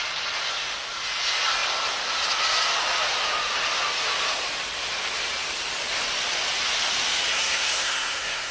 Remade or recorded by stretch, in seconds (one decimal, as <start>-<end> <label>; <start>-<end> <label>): 0.0-7.3 recorded; 7.3-8.5 remade